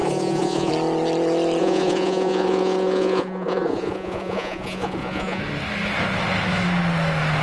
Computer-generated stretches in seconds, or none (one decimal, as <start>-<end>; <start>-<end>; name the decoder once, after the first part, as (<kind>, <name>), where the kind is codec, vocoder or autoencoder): 0.0-0.7 (vocoder, Vocos); 1.6-5.4